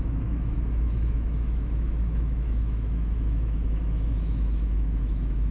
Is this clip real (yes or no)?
no